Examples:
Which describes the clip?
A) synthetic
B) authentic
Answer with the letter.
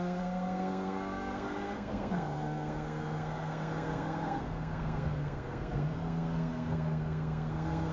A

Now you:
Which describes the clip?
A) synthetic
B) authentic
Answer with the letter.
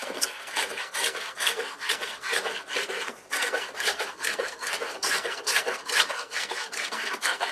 A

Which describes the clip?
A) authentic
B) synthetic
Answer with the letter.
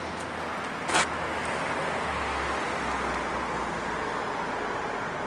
A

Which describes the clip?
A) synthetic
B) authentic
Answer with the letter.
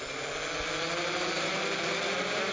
B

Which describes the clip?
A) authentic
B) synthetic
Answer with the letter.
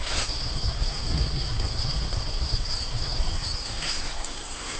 B